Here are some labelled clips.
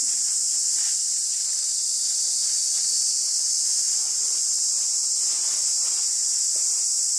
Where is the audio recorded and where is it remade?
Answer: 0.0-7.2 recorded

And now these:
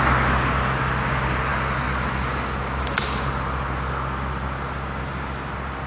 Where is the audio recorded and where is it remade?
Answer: 0.0-5.9 recorded

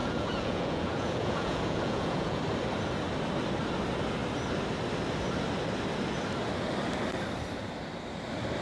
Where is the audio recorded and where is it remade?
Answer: 0.0-2.4 remade; 2.4-8.6 recorded

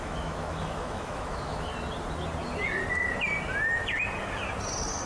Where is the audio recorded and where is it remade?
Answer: 0.0-1.7 remade; 1.7-5.1 recorded